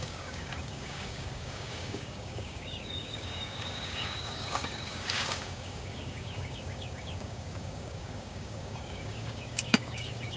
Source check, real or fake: fake